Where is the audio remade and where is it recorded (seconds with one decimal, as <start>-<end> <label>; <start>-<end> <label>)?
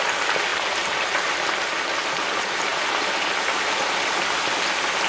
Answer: 0.0-5.1 recorded